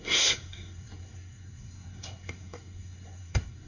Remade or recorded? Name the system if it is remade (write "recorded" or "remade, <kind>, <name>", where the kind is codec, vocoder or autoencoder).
remade, codec, SNAC